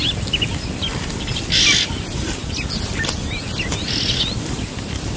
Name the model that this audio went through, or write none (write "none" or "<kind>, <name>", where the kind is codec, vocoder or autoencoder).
none